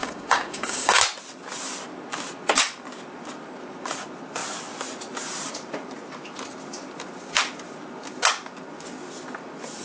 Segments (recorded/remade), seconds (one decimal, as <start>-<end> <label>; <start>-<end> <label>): 0.0-1.0 remade; 1.0-9.8 recorded